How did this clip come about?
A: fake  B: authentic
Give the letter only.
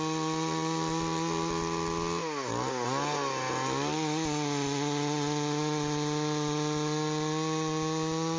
B